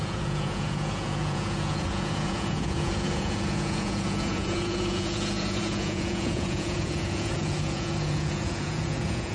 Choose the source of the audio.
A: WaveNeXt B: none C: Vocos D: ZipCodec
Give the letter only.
C